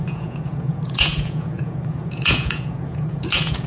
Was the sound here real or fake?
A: fake